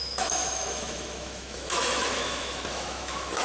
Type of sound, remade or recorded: remade